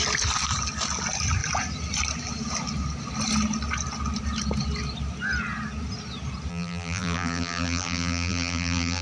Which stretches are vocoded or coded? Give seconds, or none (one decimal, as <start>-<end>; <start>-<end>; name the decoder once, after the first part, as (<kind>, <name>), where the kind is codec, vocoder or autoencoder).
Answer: 6.5-9.0 (vocoder, BigVGAN v2)